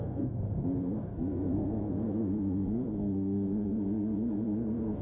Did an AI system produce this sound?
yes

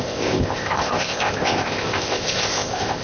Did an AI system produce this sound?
yes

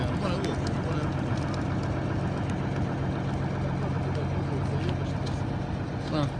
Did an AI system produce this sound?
no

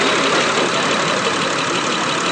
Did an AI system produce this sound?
no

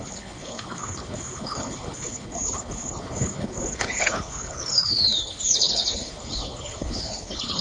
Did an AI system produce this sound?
yes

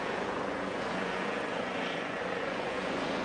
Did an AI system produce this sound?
yes